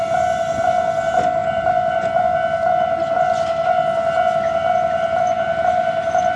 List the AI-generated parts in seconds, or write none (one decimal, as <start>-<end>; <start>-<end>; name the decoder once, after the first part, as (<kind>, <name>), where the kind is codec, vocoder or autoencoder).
none